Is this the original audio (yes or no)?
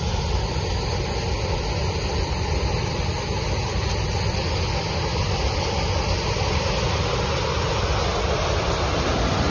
yes